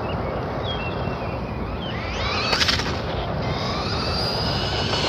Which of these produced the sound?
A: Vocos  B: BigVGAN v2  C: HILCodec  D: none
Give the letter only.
D